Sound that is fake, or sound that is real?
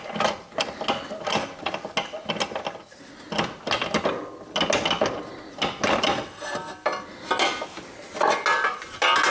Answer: real